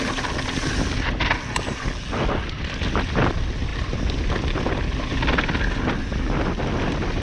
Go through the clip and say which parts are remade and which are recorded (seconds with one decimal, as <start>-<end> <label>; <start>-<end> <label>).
0.0-7.2 recorded